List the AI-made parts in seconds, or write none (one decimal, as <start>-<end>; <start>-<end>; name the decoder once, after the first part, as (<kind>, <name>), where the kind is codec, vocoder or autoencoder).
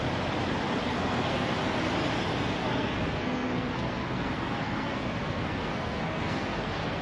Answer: 0.8-1.5 (codec, SNAC); 2.6-7.0